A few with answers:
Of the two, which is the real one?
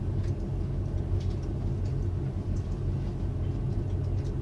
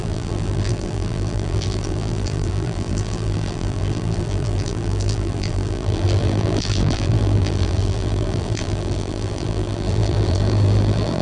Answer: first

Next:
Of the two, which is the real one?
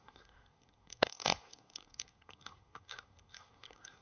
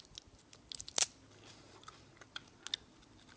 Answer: second